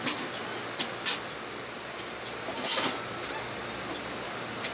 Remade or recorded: recorded